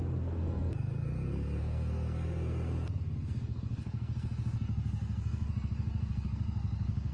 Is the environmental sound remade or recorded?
remade